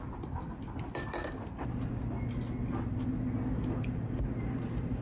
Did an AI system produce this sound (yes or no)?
no